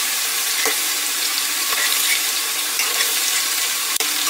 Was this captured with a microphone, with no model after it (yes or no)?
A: no